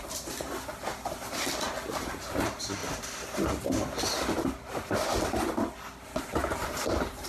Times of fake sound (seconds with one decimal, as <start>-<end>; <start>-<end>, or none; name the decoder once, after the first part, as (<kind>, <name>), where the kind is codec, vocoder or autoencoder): 0.0-0.9 (vocoder, BigVGAN v2); 2.0-2.8; 6.2-7.3